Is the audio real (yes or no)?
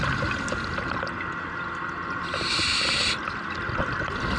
yes